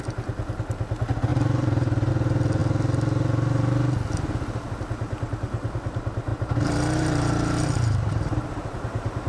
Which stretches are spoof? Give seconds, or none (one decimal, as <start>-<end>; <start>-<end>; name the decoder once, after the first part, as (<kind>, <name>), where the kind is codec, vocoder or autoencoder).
1.3-2.1 (vocoder, BigVGAN v2); 6.3-9.3